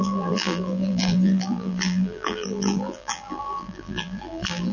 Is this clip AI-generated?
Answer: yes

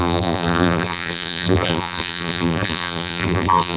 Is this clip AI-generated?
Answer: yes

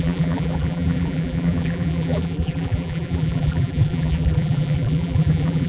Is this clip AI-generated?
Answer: yes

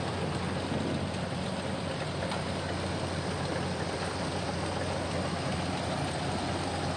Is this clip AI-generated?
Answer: no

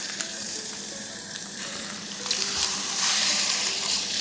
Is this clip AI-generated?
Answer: yes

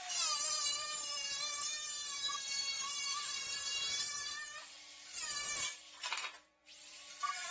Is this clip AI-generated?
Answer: yes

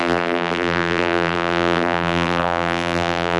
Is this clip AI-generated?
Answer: yes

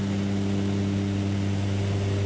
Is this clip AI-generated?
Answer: no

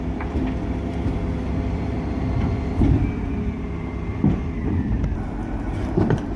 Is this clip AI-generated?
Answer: yes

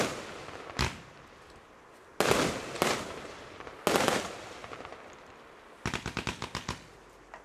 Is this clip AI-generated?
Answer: no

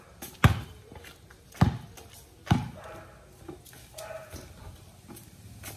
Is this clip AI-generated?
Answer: no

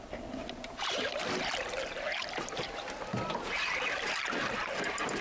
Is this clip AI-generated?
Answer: no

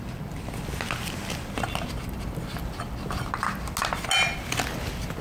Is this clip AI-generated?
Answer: no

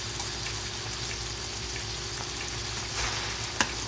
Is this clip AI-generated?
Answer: no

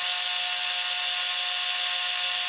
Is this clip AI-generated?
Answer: no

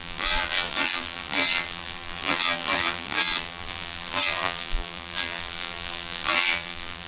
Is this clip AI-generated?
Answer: yes